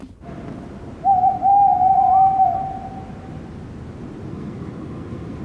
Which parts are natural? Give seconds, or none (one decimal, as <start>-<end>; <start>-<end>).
0.0-4.3